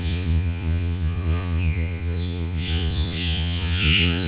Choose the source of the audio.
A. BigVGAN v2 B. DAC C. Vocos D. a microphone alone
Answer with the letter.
C